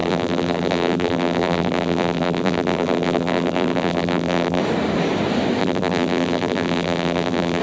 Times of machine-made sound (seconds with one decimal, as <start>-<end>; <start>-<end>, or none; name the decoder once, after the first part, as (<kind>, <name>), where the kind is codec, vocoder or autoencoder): 0.0-4.6 (vocoder, BigVGAN v2); 5.6-7.6